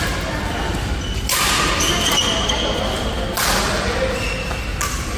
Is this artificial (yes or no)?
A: no